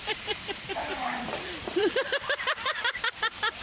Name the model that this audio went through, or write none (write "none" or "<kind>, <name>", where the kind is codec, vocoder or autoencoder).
vocoder, BigVGAN v2